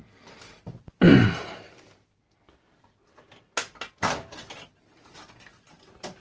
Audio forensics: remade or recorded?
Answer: recorded